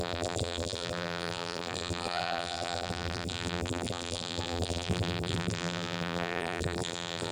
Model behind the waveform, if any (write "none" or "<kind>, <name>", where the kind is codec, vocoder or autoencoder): vocoder, BigVGAN v2